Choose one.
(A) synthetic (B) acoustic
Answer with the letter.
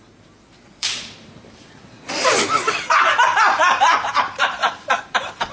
A